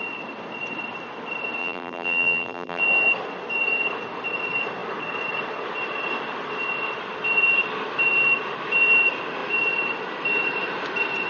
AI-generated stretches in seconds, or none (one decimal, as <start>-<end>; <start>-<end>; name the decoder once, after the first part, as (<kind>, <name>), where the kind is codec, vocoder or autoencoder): 1.6-2.8 (vocoder, BigVGAN v2)